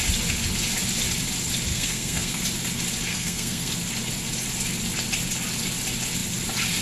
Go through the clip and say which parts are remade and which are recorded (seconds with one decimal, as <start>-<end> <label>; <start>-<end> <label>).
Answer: 0.0-1.7 recorded; 1.7-2.4 remade; 2.4-3.1 recorded; 3.1-3.7 remade; 3.7-6.8 recorded